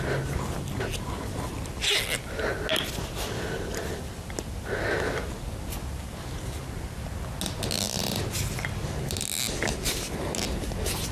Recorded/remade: recorded